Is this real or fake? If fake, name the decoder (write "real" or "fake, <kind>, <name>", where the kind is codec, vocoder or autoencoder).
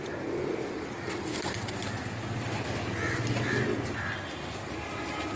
real